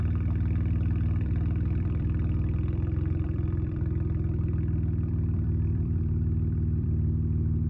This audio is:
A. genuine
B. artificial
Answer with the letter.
B